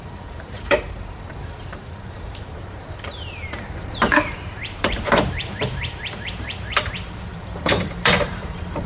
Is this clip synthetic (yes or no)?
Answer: yes